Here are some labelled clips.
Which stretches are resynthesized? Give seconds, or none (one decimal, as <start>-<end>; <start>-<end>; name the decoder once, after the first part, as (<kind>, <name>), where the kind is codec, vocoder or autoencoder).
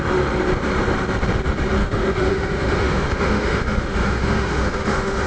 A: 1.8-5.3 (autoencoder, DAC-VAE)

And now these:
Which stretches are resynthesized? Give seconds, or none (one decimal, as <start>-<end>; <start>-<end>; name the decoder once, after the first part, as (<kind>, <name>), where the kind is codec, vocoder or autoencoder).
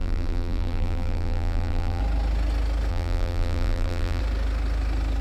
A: 0.0-2.0 (vocoder, BigVGAN v2); 2.9-4.2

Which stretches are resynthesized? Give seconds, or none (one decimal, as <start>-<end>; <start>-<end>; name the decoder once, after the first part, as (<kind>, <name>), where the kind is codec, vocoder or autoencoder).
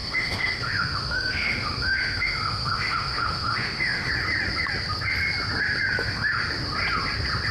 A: 0.0-4.1 (autoencoder, DAC-VAE); 6.0-6.5